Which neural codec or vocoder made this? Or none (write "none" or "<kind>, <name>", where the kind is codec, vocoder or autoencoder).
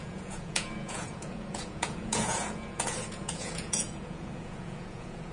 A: vocoder, Vocos